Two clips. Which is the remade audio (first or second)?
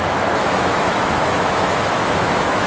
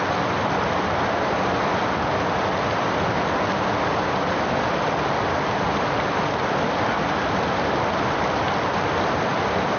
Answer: first